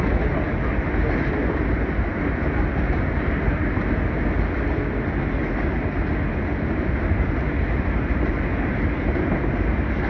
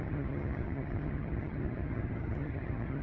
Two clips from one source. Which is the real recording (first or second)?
first